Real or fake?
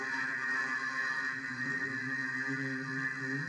real